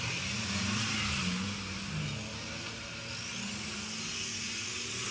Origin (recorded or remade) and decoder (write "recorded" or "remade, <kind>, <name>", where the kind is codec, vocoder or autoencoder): recorded